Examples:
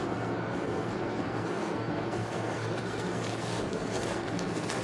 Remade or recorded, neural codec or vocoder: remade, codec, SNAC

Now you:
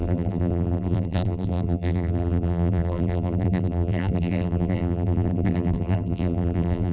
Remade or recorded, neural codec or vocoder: remade, vocoder, BigVGAN v2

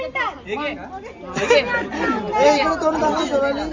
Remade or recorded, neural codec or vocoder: recorded